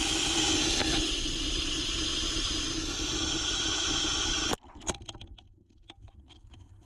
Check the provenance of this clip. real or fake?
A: real